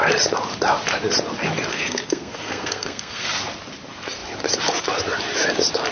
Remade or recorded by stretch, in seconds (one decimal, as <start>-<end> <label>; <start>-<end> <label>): 0.0-1.7 recorded; 1.7-3.4 remade; 3.4-5.9 recorded